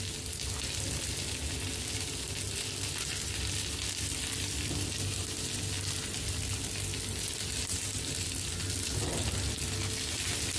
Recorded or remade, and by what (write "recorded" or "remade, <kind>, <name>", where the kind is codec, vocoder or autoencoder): recorded